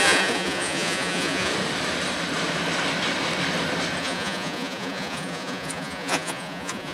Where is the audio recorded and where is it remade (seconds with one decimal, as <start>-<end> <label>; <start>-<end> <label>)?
0.0-1.5 remade; 1.5-4.0 recorded; 4.0-6.9 remade